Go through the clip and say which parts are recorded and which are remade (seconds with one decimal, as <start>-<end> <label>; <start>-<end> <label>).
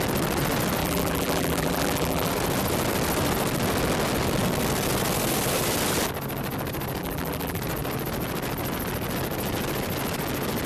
0.0-0.8 recorded; 0.8-2.3 remade; 2.3-7.0 recorded; 7.0-7.6 remade; 7.6-10.7 recorded